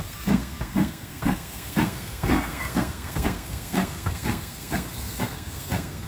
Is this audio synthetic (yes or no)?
yes